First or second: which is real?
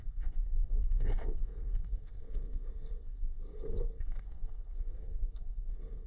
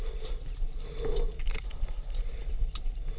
second